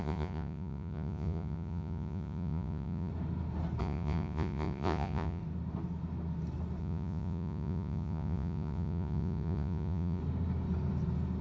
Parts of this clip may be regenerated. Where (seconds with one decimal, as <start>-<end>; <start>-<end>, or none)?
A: 0.0-3.1; 3.8-5.4; 6.8-10.2